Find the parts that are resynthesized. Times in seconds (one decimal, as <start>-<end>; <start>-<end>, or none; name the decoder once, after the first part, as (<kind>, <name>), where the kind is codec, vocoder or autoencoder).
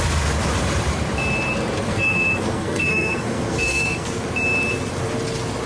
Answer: 1.9-4.1 (codec, SNAC)